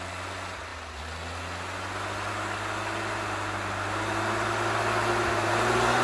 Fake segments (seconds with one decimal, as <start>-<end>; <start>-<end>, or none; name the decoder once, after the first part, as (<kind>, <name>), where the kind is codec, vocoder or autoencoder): none